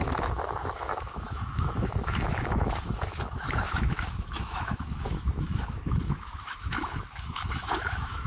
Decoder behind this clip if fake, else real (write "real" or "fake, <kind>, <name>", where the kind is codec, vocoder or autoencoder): fake, autoencoder, DAC-VAE